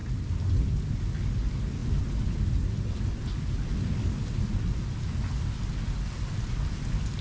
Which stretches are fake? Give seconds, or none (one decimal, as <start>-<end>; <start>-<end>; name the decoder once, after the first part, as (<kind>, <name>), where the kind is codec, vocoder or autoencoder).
none